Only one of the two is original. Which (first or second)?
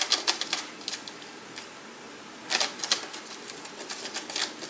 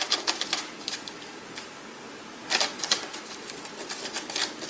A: first